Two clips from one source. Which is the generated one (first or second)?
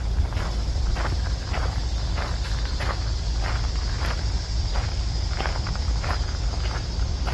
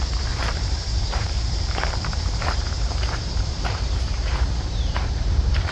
second